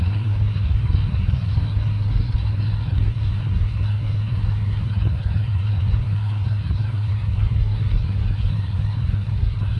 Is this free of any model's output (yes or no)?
no